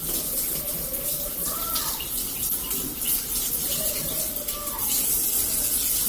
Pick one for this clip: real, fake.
real